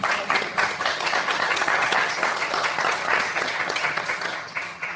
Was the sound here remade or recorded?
remade